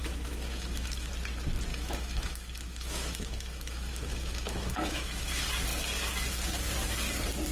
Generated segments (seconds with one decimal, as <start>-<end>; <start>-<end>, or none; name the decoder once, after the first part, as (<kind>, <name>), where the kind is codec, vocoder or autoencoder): 0.0-1.1 (autoencoder, DAC-VAE); 1.7-5.3